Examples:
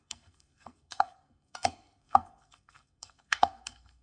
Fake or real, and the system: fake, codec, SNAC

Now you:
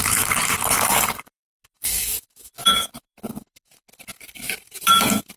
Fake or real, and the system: fake, codec, DAC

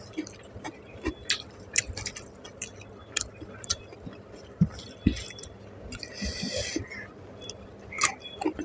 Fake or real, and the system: real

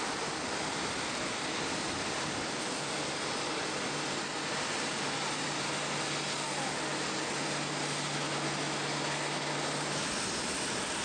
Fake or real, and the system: real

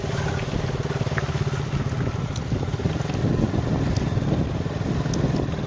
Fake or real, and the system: real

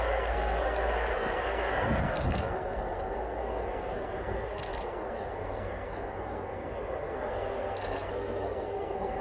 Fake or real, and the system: fake, codec, SNAC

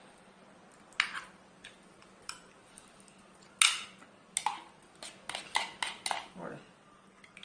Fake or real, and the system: real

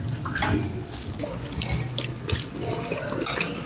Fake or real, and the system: real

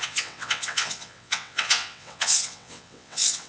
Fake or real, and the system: fake, vocoder, WaveNeXt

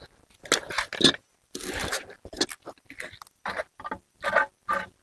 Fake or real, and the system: real